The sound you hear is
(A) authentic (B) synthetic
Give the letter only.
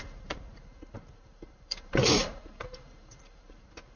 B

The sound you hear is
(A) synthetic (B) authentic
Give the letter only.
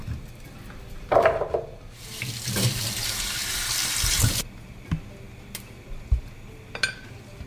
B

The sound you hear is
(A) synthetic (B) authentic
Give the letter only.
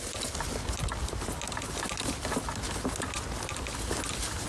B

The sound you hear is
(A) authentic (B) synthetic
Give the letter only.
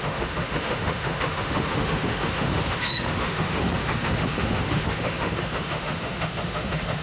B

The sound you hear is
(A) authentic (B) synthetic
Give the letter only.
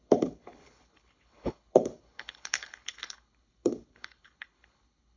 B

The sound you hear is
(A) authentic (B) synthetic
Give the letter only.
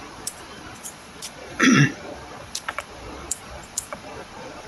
B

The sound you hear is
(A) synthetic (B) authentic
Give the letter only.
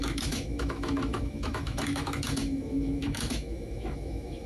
A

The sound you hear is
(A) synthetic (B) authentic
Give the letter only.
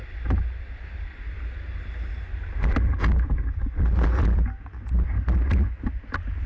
B